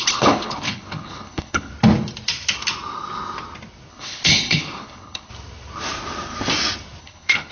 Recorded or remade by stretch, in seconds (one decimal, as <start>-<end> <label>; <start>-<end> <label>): 0.0-1.7 remade; 1.7-3.9 recorded; 3.9-5.3 remade; 5.3-7.0 recorded; 7.0-7.5 remade